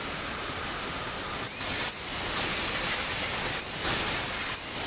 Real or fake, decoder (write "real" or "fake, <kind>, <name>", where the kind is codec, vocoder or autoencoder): real